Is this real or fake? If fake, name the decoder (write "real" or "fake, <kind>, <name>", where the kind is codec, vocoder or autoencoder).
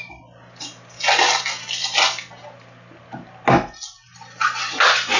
real